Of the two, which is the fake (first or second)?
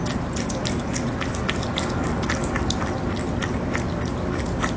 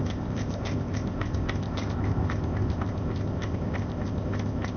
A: second